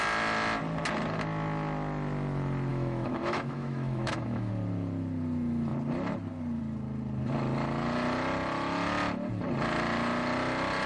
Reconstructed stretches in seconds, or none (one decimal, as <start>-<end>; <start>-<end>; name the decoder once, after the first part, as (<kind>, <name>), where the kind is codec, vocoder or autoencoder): 2.7-4.5 (autoencoder, DAC-VAE)